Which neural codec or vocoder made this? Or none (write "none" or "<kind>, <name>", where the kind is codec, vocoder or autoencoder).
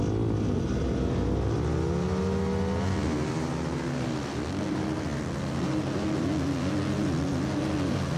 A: none